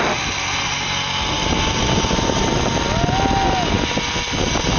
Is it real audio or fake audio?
real